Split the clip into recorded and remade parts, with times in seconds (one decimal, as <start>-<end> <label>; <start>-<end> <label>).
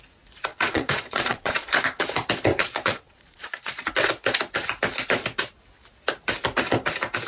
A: 0.0-0.5 recorded; 0.5-1.8 remade; 1.8-2.5 recorded; 2.5-3.9 remade; 3.9-7.3 recorded